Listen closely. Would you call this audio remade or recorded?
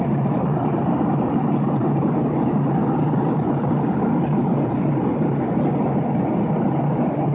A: recorded